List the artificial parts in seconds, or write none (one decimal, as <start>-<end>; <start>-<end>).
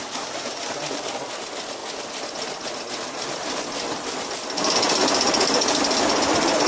none